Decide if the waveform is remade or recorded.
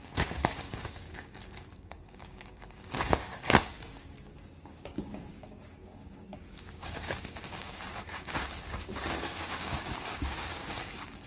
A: remade